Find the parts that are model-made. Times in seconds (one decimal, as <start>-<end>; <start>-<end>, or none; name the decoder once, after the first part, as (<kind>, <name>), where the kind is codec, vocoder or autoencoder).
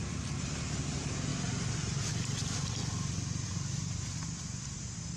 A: 1.3-2.1 (vocoder, BigVGAN v2); 2.8-4.7